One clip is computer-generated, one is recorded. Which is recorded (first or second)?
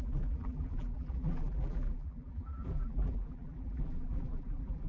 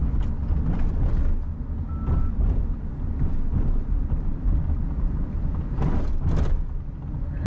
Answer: second